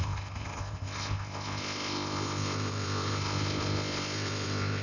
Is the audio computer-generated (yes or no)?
yes